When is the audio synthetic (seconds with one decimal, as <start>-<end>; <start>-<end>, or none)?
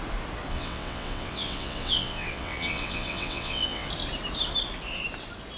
0.5-3.9